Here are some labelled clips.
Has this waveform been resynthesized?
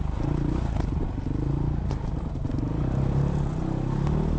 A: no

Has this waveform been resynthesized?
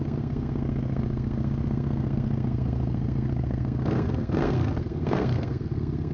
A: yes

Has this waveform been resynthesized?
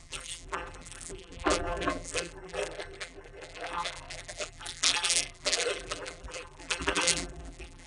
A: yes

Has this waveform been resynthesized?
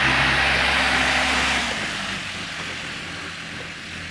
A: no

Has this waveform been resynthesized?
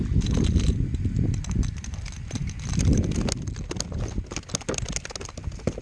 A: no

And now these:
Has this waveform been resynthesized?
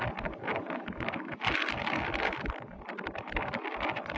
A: no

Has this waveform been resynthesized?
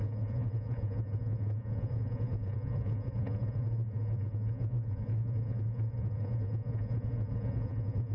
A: yes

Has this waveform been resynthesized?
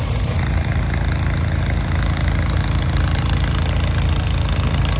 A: no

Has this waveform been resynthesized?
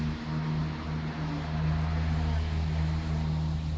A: no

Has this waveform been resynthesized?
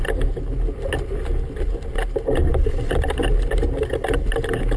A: no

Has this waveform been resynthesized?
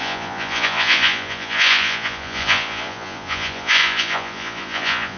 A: yes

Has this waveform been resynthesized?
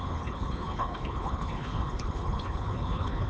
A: yes